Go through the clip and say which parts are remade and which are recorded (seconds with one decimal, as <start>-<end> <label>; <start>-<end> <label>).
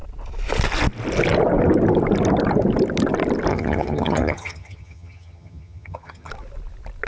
0.0-3.5 recorded; 3.5-6.3 remade; 6.3-7.1 recorded